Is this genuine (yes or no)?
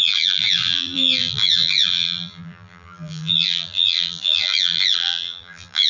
no